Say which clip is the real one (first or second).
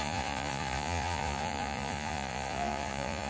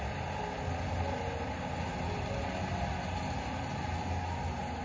second